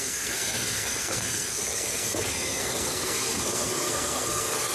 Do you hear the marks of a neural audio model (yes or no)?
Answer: yes